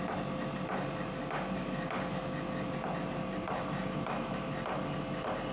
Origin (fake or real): real